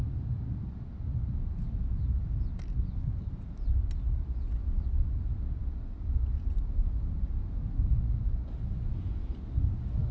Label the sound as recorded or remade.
recorded